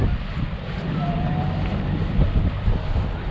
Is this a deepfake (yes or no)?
no